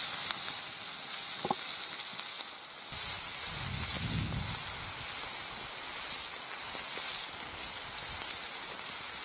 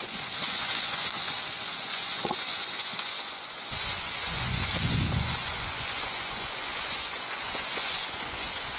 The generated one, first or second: second